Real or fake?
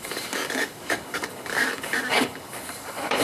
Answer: fake